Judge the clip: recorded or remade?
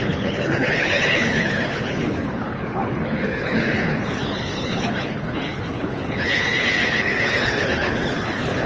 remade